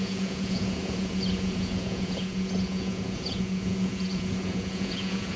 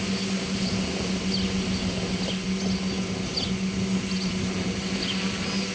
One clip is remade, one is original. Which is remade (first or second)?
first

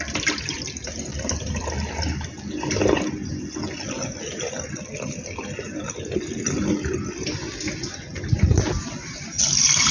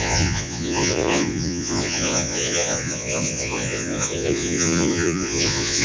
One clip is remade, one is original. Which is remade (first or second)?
second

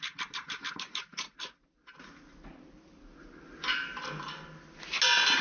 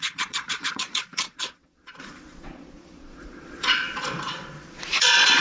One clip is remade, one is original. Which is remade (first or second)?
second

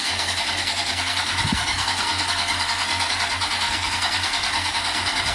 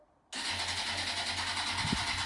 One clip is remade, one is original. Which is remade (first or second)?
first